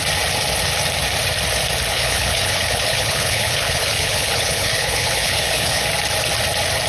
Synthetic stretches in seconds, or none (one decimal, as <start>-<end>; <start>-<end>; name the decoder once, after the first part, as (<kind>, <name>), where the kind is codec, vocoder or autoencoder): 1.9-5.8 (codec, HILCodec)